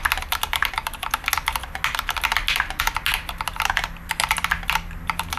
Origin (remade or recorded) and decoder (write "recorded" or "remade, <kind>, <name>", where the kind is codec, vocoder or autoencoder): recorded